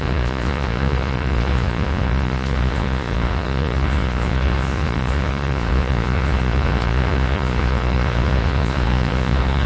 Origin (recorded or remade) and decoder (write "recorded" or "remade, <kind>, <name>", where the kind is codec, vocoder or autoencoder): remade, vocoder, Vocos